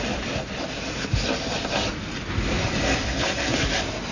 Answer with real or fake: real